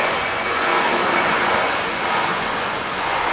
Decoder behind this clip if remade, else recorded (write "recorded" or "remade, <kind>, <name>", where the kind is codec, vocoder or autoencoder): remade, vocoder, Vocos